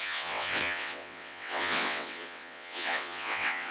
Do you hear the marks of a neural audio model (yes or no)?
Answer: yes